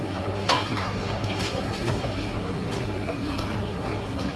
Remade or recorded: remade